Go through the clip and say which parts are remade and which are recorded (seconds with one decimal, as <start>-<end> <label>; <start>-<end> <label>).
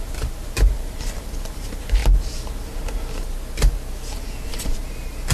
0.0-2.0 remade; 2.0-5.3 recorded